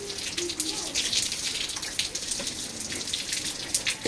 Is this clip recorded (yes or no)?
yes